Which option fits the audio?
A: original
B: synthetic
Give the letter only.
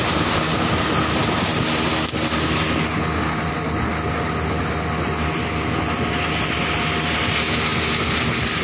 A